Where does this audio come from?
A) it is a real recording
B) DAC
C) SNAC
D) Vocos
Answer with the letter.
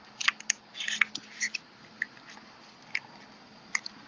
A